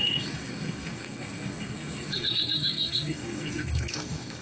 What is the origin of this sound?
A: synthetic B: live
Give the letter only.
A